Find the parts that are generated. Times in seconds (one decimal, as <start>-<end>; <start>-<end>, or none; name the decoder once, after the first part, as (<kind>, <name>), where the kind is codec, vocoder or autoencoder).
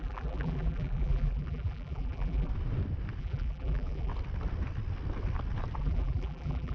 0.0-2.5 (vocoder, BigVGAN v2); 3.2-4.1; 5.8-6.7